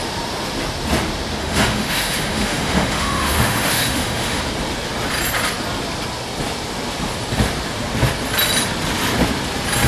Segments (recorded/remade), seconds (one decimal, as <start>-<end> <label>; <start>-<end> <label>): 0.0-1.4 recorded; 1.4-4.4 remade; 4.4-9.9 recorded